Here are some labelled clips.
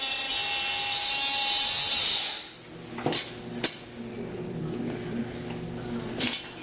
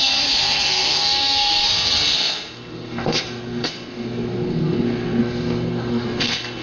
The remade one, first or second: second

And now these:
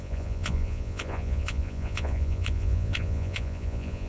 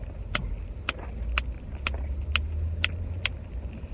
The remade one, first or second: first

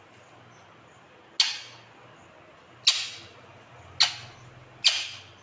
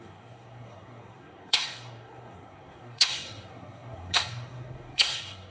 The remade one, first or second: second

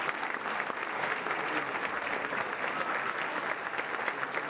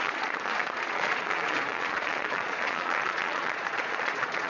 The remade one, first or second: second